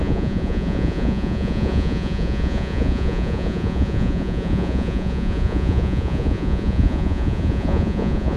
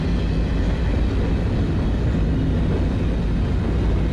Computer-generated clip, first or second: first